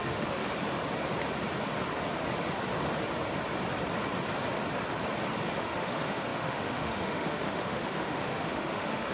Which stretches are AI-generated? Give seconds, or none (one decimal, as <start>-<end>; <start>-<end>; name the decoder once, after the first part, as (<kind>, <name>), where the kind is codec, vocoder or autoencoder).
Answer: 0.0-0.4 (autoencoder, DAC-VAE); 5.6-9.1

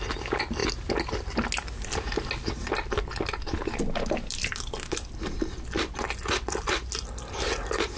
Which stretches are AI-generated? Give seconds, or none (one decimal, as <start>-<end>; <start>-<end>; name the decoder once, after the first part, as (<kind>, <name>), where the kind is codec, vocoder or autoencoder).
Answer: none

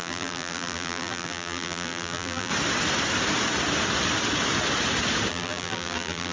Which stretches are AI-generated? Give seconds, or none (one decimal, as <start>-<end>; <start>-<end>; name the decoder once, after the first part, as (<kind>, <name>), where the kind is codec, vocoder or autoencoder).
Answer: 0.0-2.5 (vocoder, BigVGAN v2); 5.3-6.3

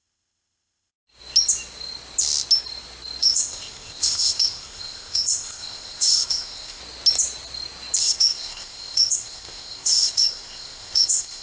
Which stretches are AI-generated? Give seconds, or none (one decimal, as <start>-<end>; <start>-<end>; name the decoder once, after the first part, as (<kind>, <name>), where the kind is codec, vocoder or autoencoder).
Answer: 0.0-0.9 (codec, ZipCodec); 3.2-6.8; 8.0-11.4

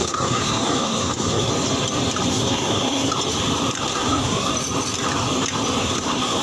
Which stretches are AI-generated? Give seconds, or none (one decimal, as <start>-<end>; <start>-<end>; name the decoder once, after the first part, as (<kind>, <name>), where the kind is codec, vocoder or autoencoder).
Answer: 0.0-1.5 (codec, SNAC); 2.3-3.1; 3.9-4.5; 5.8-6.4

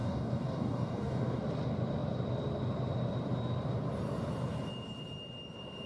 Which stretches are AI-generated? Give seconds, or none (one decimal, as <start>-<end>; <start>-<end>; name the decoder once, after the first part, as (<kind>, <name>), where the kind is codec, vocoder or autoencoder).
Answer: 0.0-1.4 (codec, DAC)